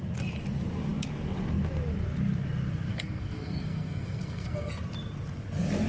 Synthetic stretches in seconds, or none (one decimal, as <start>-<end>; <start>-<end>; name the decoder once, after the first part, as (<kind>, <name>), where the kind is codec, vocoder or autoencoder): 2.9-4.7 (codec, SNAC)

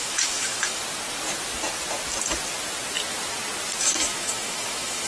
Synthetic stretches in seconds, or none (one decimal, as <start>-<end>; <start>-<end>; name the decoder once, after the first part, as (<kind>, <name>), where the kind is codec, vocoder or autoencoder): 0.0-0.8 (autoencoder, DAC-VAE); 3.8-5.1

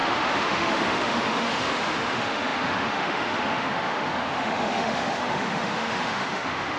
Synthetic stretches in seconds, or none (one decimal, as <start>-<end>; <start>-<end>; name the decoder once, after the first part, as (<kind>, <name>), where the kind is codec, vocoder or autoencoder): 0.0-6.8 (autoencoder, DAC-VAE)

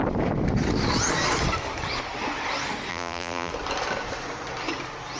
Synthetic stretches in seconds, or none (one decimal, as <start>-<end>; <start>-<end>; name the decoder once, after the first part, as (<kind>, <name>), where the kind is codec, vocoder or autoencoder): 2.9-3.5 (vocoder, BigVGAN v2)

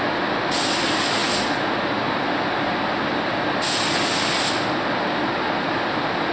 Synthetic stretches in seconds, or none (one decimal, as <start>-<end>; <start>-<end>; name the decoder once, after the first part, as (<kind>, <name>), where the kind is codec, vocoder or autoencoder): none

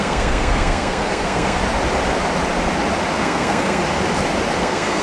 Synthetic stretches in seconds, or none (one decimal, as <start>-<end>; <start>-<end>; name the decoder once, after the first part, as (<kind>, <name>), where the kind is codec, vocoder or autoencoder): 0.0-1.6 (codec, SNAC); 3.2-3.8; 4.6-5.0